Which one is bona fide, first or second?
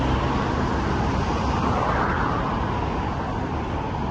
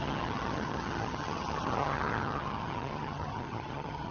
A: first